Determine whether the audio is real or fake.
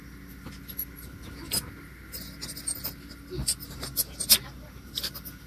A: real